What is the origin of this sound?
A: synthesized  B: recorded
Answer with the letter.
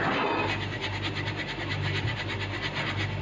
B